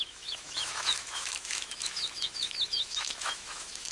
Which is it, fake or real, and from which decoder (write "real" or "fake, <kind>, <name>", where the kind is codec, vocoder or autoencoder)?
fake, autoencoder, DAC-VAE